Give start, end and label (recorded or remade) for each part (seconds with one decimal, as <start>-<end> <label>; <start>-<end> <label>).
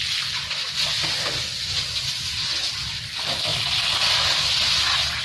0.0-5.2 recorded